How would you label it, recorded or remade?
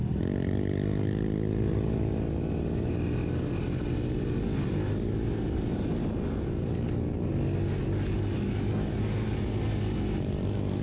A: recorded